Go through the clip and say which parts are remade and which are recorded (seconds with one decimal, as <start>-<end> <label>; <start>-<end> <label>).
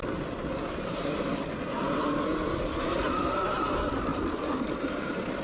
0.0-2.9 remade; 2.9-3.6 recorded; 3.6-5.4 remade